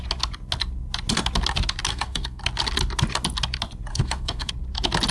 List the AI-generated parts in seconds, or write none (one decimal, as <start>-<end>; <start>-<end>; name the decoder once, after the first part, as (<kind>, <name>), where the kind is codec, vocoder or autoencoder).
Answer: 1.9-2.4 (codec, SNAC); 3.9-4.5